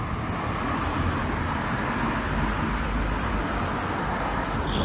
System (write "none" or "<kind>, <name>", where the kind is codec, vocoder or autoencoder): none